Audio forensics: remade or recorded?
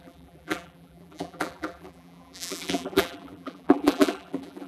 remade